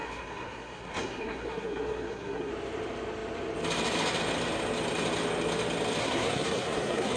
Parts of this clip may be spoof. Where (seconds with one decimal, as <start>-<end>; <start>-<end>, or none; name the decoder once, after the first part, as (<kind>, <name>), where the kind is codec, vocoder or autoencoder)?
0.0-2.5 (codec, SNAC); 6.0-7.2